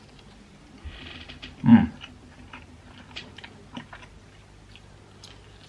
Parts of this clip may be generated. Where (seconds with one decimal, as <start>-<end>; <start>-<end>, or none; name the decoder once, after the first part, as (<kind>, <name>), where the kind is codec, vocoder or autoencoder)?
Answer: none

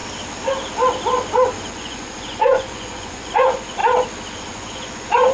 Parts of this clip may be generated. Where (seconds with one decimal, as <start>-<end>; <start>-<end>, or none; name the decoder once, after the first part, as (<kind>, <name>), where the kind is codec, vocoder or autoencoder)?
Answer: 1.7-3.8 (vocoder, Vocos); 4.3-5.3

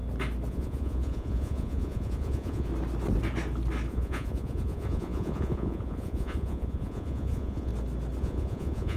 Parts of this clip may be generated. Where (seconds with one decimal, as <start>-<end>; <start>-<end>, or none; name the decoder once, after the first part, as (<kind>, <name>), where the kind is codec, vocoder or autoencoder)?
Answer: 0.5-2.7 (vocoder, Vocos); 3.9-7.7; 8.2-9.0

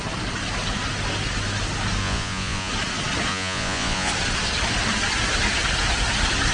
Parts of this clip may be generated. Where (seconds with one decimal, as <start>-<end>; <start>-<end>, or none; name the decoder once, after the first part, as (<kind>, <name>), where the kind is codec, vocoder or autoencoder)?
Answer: 2.0-2.7 (vocoder, Vocos); 3.3-4.1

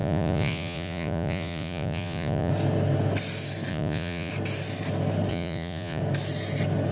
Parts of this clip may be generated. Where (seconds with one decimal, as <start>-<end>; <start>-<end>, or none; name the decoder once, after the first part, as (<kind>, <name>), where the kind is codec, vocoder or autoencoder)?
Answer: 0.0-2.5 (vocoder, Vocos); 3.7-4.3; 5.3-6.0